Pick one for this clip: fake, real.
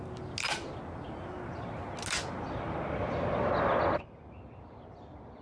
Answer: real